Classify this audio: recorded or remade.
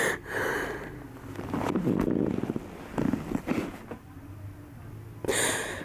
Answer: recorded